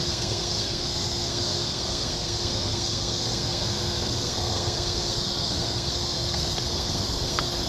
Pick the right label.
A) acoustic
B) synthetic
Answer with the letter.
B